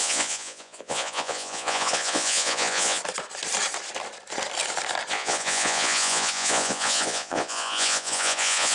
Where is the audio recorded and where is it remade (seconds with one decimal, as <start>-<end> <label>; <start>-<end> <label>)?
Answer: 0.0-3.0 remade; 3.0-5.1 recorded; 5.1-8.7 remade